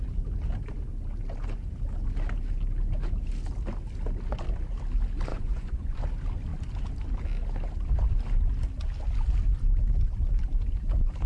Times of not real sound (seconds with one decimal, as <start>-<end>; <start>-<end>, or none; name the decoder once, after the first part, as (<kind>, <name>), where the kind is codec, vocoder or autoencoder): 5.3-6.0 (vocoder, Vocos)